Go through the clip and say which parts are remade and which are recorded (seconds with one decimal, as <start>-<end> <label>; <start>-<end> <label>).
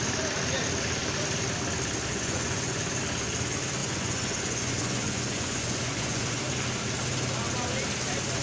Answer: 0.0-2.1 recorded; 2.1-2.9 remade; 2.9-3.8 recorded; 3.8-6.4 remade; 6.4-8.4 recorded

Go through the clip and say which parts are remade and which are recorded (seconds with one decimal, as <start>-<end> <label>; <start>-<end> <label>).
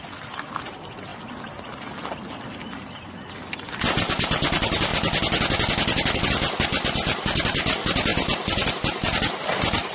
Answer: 0.0-9.9 recorded